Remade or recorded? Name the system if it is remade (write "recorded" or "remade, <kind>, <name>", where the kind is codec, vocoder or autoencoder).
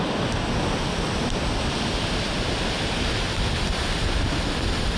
recorded